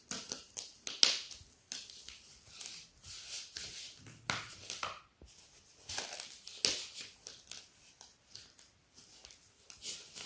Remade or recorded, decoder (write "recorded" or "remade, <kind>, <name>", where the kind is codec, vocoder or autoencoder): recorded